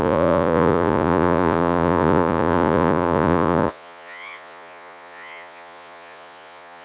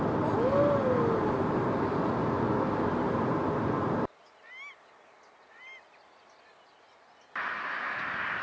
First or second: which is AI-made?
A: first